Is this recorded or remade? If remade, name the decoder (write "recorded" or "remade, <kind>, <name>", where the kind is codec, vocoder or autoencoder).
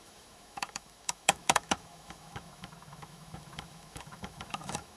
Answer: remade, autoencoder, DAC-VAE